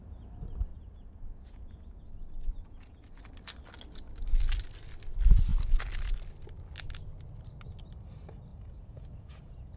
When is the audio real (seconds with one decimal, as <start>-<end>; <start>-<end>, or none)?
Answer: 0.0-0.7; 3.2-8.5